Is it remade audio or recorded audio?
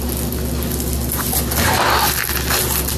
recorded